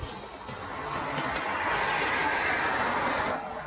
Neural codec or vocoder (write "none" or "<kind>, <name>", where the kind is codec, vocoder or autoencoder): none